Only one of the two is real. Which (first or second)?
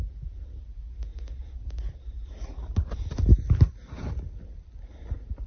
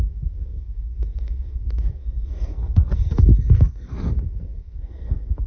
first